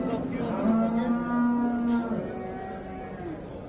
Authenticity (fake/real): real